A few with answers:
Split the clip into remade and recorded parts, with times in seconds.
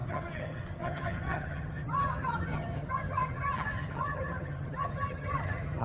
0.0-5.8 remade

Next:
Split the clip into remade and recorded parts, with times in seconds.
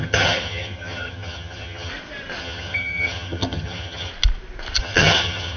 0.0-1.9 remade; 1.9-2.4 recorded; 2.4-4.1 remade; 4.1-4.8 recorded; 4.8-5.6 remade